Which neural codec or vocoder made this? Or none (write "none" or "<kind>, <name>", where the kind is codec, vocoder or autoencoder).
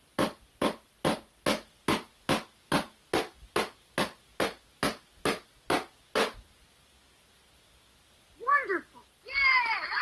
none